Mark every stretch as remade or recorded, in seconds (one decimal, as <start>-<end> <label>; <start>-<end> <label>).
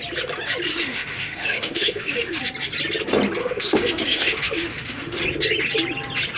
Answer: 0.0-0.7 recorded; 0.7-2.4 remade; 2.4-3.4 recorded; 3.4-5.2 remade; 5.2-6.4 recorded